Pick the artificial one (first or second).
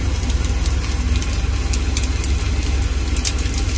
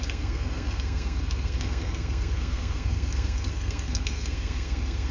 second